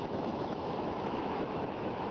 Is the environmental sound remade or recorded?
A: remade